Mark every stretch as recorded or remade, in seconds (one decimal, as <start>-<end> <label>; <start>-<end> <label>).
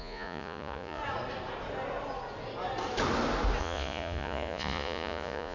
0.0-1.0 remade; 1.0-3.6 recorded; 3.6-5.5 remade